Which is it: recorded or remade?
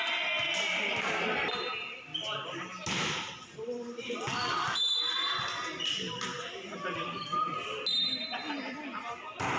recorded